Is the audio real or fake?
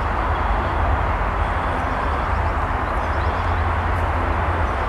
real